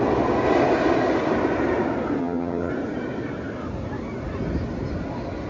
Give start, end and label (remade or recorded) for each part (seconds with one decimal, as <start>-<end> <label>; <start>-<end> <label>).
0.0-2.2 recorded; 2.2-2.7 remade; 2.7-5.5 recorded